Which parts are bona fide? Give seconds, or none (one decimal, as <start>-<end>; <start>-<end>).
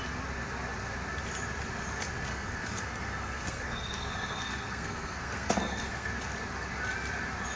0.0-2.3; 6.1-7.6